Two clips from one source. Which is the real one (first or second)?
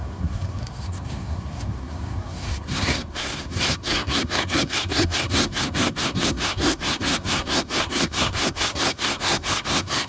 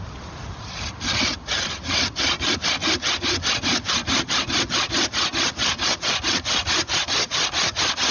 second